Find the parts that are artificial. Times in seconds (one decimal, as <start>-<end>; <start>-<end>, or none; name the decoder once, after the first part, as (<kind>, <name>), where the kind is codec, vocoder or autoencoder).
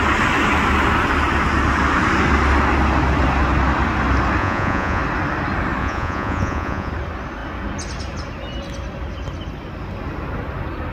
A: 4.4-5.0 (vocoder, Vocos); 5.8-6.9